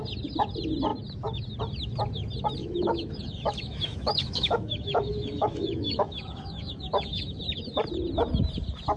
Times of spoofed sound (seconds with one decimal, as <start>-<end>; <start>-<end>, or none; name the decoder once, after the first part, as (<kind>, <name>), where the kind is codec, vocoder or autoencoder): 2.6-7.4 (autoencoder, DAC-VAE)

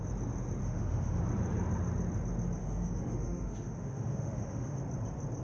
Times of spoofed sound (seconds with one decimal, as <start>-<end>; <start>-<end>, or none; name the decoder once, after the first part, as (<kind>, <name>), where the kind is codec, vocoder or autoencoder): 0.6-1.2 (autoencoder, DAC-VAE); 2.6-4.8

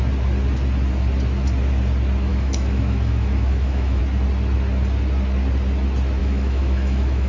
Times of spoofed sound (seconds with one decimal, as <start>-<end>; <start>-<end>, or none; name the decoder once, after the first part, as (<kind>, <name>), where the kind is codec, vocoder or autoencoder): 2.3-4.0 (autoencoder, DAC-VAE); 6.2-7.3